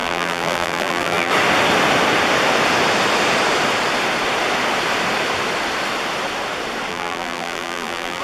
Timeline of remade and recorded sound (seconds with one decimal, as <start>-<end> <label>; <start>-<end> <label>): 0.0-1.3 remade; 1.3-6.9 recorded; 6.9-8.2 remade